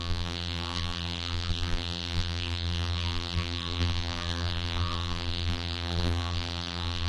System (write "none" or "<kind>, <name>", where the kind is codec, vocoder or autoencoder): vocoder, BigVGAN v2